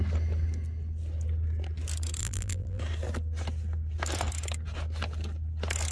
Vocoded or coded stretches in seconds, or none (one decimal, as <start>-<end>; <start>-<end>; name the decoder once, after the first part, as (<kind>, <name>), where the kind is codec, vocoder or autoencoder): 2.2-2.8 (vocoder, BigVGAN v2)